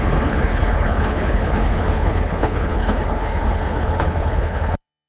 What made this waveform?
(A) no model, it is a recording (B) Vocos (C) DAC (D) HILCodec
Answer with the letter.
D